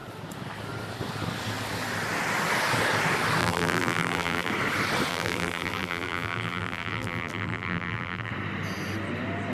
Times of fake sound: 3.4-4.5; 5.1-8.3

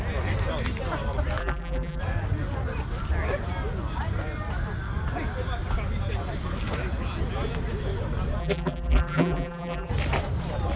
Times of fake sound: 1.4-2.0; 8.4-9.9

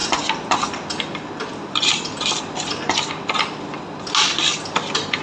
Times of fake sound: none

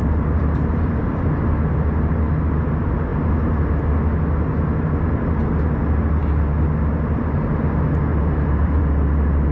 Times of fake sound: 0.0-1.4; 8.1-8.8

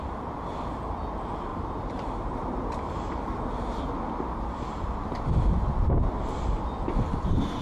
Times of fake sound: 1.5-3.4

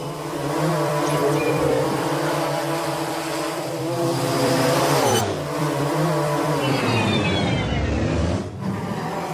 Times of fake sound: 0.0-9.3

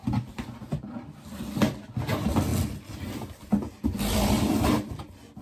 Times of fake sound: none